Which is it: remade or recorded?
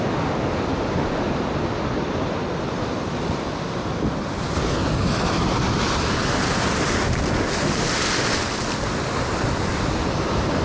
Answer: recorded